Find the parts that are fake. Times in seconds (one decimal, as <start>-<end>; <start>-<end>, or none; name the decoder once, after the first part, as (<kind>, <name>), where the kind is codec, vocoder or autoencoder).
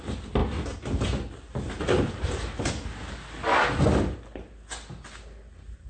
none